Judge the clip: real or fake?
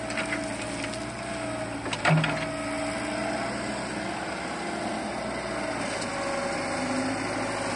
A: real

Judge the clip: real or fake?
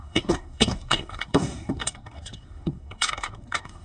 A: fake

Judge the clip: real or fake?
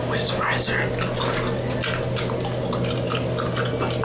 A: real